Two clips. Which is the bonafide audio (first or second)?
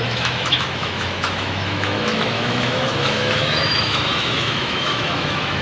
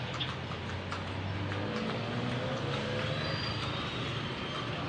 second